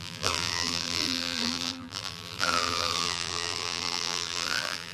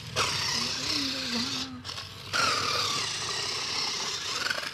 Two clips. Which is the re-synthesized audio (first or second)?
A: first